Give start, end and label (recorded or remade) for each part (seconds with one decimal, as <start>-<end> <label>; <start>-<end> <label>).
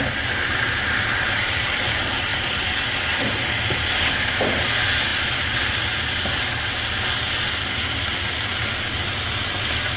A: 0.0-1.1 recorded; 1.1-1.7 remade; 1.7-2.3 recorded; 2.3-3.3 remade; 3.3-10.0 recorded